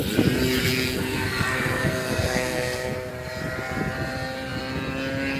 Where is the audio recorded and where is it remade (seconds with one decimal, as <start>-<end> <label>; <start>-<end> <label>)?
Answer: 0.0-0.6 recorded; 0.6-3.1 remade; 3.1-5.4 recorded